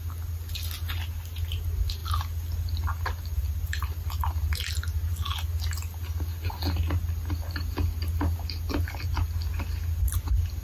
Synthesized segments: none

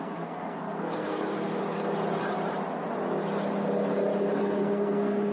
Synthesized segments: 0.0-1.6 (codec, SNAC); 4.4-5.3

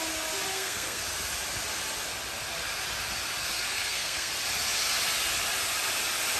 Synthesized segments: 0.5-1.0 (codec, SNAC); 3.4-4.3

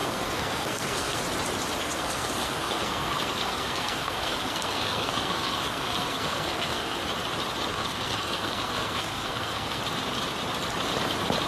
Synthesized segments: 0.0-1.2 (codec, SNAC); 1.8-7.0; 7.7-9.8